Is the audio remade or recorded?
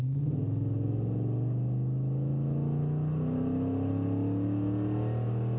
recorded